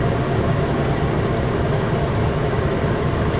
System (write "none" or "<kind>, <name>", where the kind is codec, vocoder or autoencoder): none